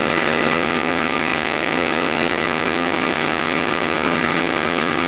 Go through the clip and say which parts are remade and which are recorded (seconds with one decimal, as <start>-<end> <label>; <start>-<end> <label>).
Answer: 0.0-5.1 remade